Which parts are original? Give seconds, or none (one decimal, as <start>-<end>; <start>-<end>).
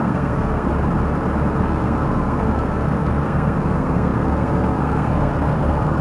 0.7-1.6